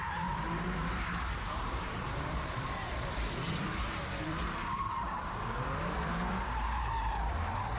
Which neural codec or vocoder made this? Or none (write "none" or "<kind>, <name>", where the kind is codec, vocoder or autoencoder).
vocoder, BigVGAN v2